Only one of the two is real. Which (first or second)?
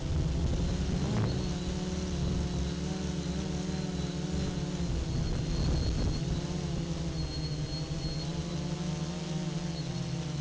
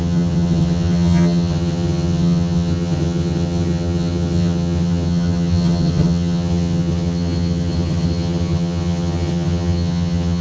first